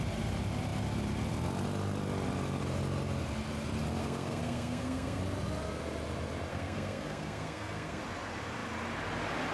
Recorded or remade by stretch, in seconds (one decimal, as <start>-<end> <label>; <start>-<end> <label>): 0.0-4.0 recorded; 4.0-5.2 remade; 5.2-6.5 recorded; 6.5-8.0 remade; 8.0-9.5 recorded